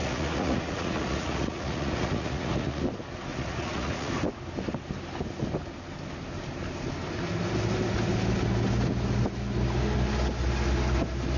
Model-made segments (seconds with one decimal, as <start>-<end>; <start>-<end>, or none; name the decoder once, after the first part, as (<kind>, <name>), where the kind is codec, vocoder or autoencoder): 0.0-2.8 (vocoder, Vocos); 3.3-4.1